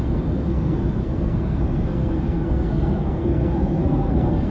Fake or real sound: fake